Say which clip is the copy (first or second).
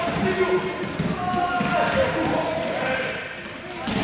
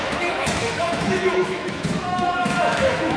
second